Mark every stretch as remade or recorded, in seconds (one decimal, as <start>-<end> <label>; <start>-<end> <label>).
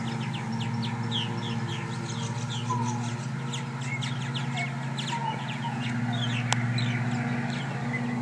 0.0-5.2 recorded; 5.2-5.9 remade; 5.9-8.2 recorded